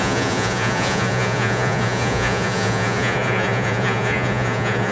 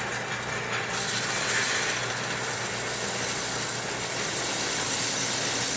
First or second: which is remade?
first